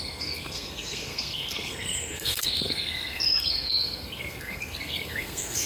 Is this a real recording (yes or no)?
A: no